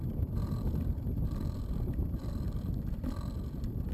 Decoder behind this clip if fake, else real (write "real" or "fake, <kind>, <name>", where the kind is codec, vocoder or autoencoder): fake, vocoder, BigVGAN v2